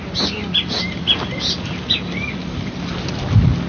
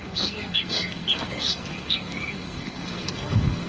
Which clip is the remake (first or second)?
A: second